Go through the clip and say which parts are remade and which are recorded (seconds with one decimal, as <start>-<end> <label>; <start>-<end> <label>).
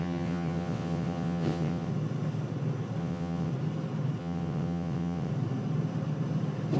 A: 0.0-1.9 remade; 1.9-3.0 recorded; 3.0-3.5 remade; 3.5-4.2 recorded; 4.2-5.3 remade; 5.3-6.8 recorded